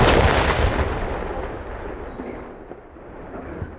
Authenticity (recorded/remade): recorded